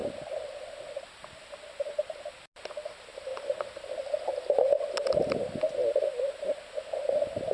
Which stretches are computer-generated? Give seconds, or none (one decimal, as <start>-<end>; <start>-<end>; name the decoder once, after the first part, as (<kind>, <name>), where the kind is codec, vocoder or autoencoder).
none